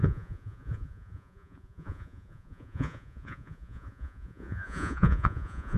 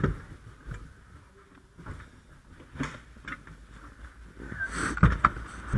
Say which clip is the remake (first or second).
first